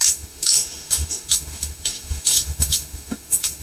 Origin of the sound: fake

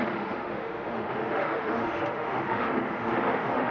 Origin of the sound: fake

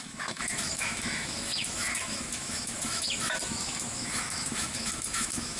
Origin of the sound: fake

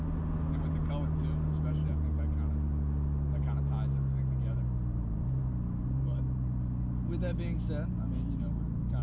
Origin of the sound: real